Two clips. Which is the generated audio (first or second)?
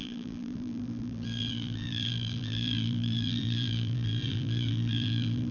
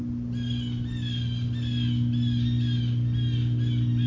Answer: first